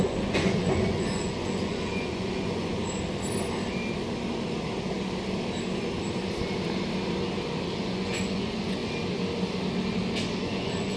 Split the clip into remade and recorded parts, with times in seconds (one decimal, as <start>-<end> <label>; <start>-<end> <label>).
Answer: 0.0-2.8 remade; 2.8-7.8 recorded; 7.8-8.8 remade; 8.8-10.4 recorded; 10.4-11.0 remade